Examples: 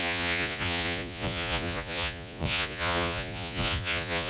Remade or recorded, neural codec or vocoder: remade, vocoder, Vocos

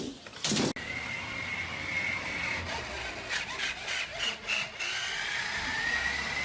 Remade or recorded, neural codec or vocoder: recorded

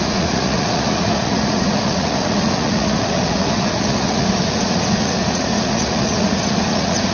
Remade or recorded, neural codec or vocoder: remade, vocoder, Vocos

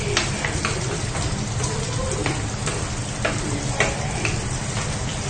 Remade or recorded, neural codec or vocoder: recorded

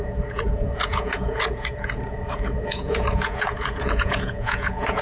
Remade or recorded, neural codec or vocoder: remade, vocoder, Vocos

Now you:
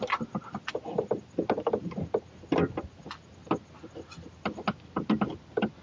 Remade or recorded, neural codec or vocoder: recorded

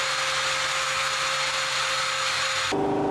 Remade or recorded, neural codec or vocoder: recorded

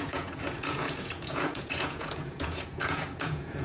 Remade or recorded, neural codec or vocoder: remade, vocoder, Vocos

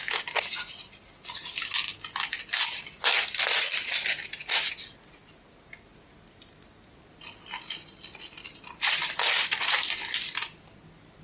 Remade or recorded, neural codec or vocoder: recorded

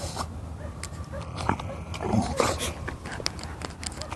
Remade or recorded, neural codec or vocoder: recorded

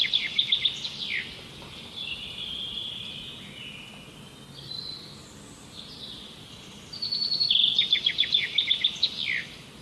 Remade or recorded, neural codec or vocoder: recorded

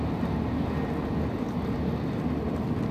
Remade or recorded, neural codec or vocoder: recorded